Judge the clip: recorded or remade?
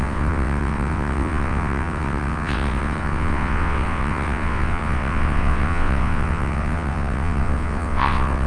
remade